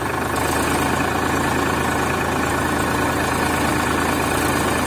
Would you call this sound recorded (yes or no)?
yes